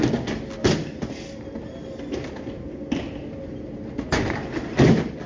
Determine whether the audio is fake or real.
real